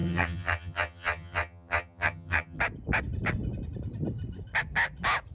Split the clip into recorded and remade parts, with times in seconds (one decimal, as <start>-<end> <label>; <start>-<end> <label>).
0.0-2.6 remade; 2.6-5.3 recorded